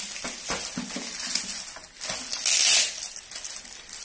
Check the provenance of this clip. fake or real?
real